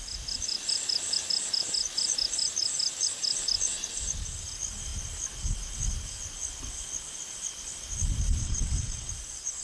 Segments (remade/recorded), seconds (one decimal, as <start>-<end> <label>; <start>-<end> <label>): 0.0-8.4 recorded; 8.4-9.1 remade; 9.1-9.6 recorded

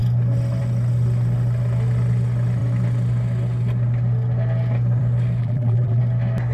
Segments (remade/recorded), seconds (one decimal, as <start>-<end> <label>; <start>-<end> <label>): 0.0-5.4 recorded; 5.4-6.0 remade; 6.0-6.5 recorded

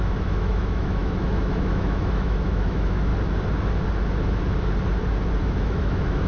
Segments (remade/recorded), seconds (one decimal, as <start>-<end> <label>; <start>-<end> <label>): 0.0-3.1 remade; 3.1-5.4 recorded; 5.4-6.3 remade

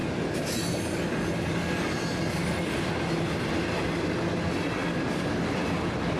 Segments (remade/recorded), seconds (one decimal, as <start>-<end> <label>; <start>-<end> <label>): 0.0-6.2 recorded